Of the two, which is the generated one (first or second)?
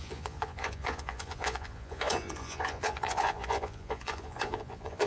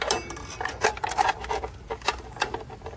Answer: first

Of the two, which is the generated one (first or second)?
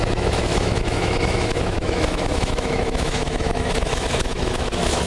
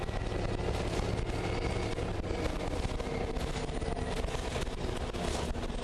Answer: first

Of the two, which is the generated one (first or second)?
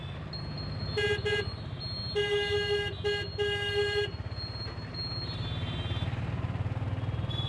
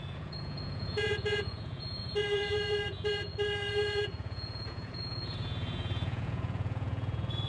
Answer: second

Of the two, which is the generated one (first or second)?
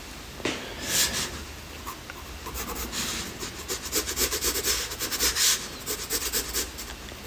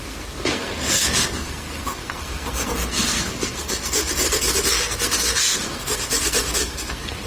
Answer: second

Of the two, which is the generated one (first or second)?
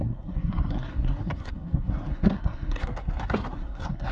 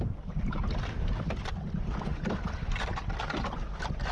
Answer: first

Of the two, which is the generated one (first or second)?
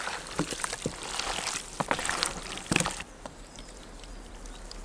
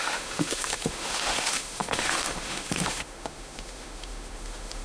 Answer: second